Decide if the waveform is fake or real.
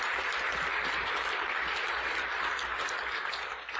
fake